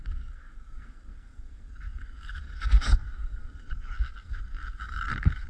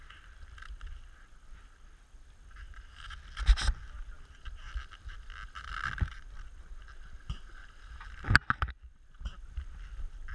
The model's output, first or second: first